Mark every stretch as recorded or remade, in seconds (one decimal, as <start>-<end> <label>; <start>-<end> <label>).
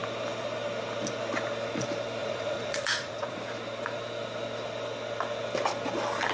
0.0-2.2 recorded; 2.2-3.4 remade; 3.4-6.3 recorded